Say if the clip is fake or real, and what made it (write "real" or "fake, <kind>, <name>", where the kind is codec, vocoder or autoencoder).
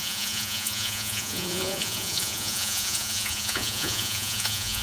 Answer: fake, vocoder, Vocos